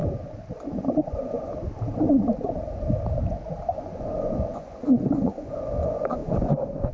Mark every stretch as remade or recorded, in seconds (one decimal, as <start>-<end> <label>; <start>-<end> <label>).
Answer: 0.0-1.0 recorded; 1.0-1.5 remade; 1.5-3.8 recorded; 3.8-6.9 remade